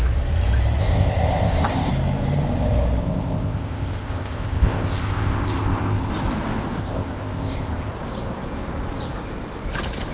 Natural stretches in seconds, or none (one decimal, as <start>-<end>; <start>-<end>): 0.0-0.8; 1.9-3.0; 6.1-6.8; 7.9-10.1

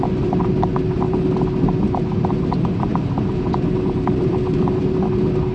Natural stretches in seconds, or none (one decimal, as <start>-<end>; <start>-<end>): 0.0-5.5

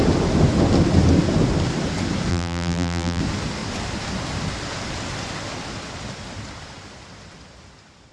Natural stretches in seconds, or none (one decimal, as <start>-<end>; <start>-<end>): 0.0-2.3; 3.2-8.1

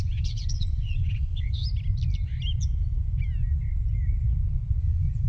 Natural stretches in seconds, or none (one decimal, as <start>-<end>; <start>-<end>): 1.6-4.8

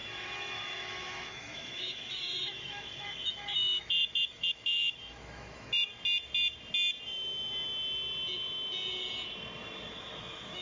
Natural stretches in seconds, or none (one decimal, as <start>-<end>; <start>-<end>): 5.9-9.9

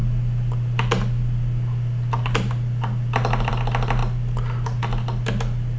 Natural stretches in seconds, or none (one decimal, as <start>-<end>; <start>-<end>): 0.0-5.8

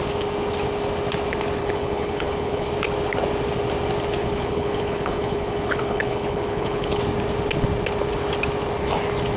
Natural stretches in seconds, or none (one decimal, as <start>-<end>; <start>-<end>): 0.0-1.6; 2.7-4.2; 7.0-9.4

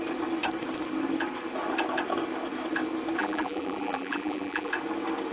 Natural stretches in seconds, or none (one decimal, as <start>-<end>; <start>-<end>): 0.0-3.2; 4.7-5.3